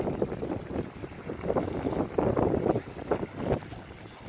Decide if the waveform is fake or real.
real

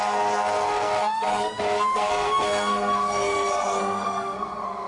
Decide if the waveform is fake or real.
fake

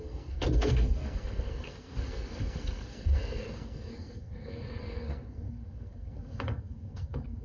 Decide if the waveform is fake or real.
fake